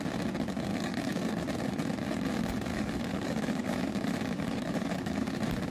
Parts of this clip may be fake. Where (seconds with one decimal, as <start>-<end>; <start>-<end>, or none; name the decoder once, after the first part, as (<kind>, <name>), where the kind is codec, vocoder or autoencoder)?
0.7-1.3 (codec, DAC); 2.7-5.3